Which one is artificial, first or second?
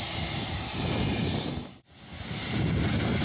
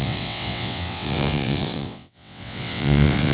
second